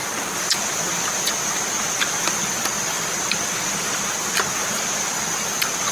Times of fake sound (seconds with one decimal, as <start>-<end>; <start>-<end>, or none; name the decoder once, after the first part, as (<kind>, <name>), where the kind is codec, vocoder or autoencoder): none